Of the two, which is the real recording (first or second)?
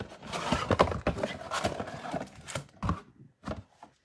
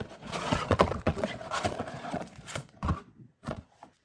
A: first